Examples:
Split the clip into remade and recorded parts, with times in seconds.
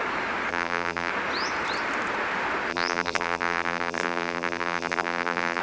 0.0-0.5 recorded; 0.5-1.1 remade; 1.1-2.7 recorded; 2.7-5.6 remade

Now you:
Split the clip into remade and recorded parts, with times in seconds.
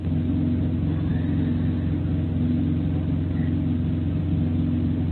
0.0-5.1 recorded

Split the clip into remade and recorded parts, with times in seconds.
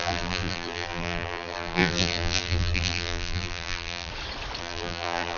0.0-4.1 remade; 4.1-4.6 recorded; 4.6-5.4 remade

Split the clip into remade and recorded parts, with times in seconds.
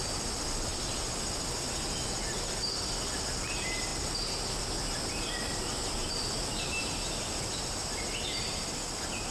0.0-9.3 recorded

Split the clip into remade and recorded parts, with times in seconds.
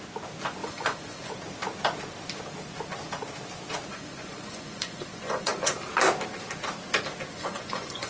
0.0-0.6 recorded; 0.6-1.3 remade; 1.3-3.9 recorded; 3.9-5.9 remade; 5.9-7.3 recorded; 7.3-8.1 remade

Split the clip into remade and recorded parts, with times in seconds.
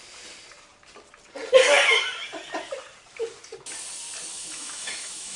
0.0-4.3 recorded; 4.3-5.4 remade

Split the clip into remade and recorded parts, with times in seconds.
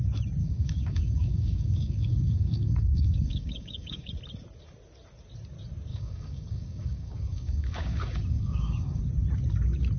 0.0-0.4 recorded; 0.4-4.1 remade; 4.1-5.9 recorded; 5.9-9.0 remade; 9.0-10.0 recorded